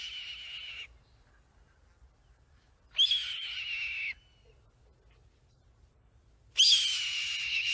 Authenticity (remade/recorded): recorded